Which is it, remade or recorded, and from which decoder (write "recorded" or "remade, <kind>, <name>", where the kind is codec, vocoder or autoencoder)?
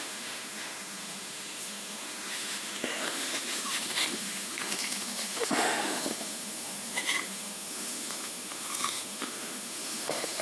remade, autoencoder, DAC-VAE